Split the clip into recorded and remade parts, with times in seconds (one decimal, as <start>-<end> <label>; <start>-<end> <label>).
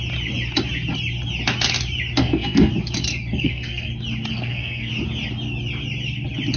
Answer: 0.0-2.2 recorded; 2.2-2.7 remade; 2.7-3.3 recorded; 3.3-3.9 remade; 3.9-4.3 recorded; 4.3-4.9 remade; 4.9-6.6 recorded